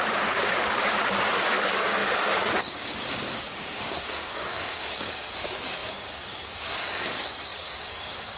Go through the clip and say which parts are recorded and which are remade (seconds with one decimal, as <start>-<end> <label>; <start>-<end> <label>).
0.0-8.4 remade